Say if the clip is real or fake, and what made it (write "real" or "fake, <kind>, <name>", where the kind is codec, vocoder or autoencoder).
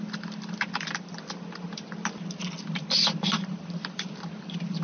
real